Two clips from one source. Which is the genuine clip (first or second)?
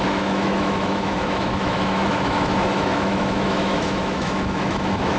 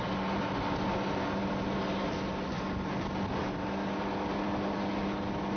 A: second